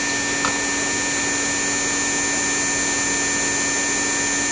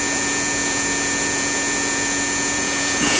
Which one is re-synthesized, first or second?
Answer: second